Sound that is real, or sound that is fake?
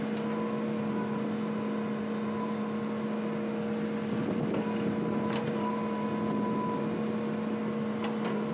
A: real